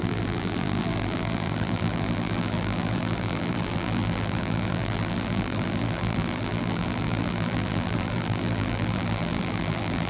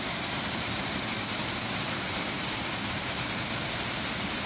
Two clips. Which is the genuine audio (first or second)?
second